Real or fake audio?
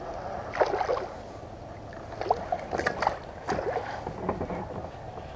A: real